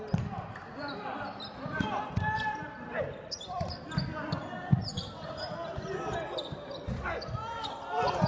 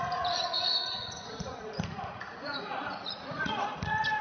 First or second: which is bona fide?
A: first